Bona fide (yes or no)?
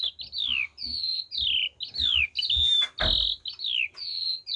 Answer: yes